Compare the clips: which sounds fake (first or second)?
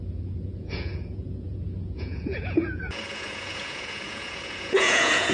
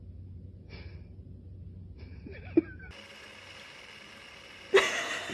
first